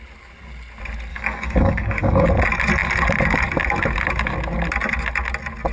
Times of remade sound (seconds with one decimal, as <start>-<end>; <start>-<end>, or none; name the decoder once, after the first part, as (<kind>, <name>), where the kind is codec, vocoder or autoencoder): 1.1-2.3 (codec, DAC)